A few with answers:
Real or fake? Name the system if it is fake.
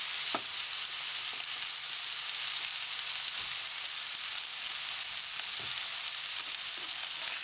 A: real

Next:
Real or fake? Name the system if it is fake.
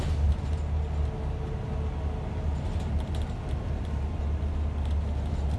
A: real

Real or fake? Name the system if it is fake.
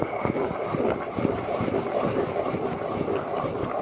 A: real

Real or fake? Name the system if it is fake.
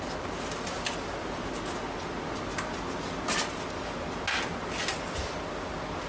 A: real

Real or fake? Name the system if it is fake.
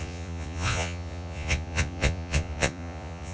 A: fake, vocoder, Vocos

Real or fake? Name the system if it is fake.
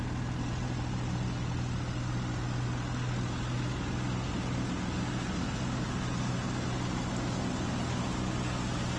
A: real